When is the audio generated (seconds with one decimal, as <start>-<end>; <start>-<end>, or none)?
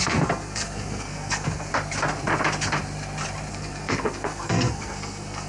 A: 0.0-1.7; 3.5-5.5